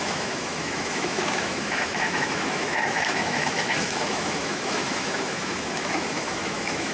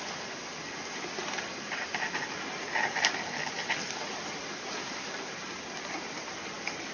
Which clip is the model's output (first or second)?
first